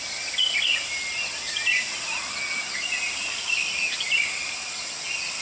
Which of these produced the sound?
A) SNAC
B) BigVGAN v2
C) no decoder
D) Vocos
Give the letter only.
C